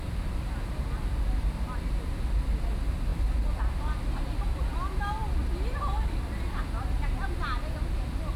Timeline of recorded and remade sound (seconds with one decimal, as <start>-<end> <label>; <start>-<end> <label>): 0.0-8.4 recorded